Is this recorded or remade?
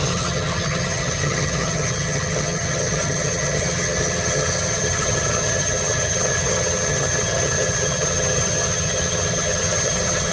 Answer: remade